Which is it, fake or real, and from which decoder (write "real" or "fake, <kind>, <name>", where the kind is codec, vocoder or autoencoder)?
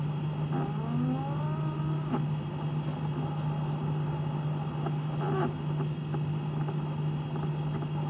real